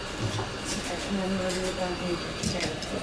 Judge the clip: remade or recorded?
recorded